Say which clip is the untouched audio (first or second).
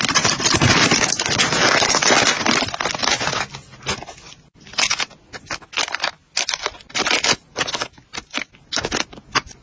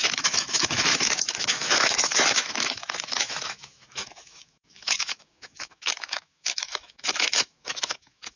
first